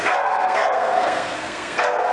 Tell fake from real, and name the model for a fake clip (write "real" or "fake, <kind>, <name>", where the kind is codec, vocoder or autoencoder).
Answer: fake, codec, SNAC